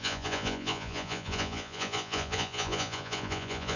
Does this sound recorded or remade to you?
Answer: remade